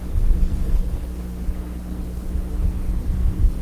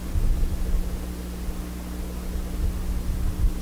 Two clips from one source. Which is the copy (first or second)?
first